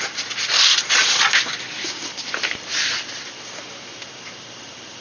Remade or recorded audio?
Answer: remade